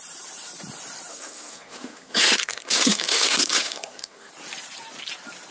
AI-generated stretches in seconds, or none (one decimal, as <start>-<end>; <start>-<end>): 1.1-4.3